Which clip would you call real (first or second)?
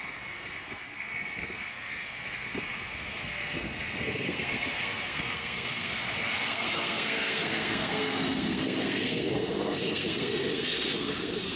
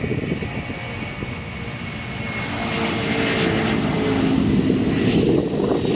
second